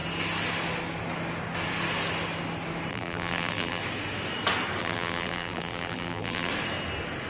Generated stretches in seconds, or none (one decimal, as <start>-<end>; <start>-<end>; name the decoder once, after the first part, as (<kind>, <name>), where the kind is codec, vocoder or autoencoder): 2.9-3.8 (vocoder, BigVGAN v2); 4.8-6.5